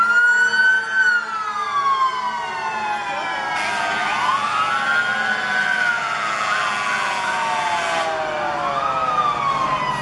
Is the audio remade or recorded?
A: recorded